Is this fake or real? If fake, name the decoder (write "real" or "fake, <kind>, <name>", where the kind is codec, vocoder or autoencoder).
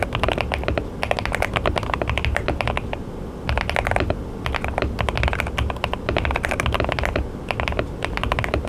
real